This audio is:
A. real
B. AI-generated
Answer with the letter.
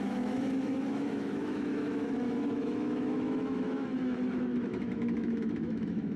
B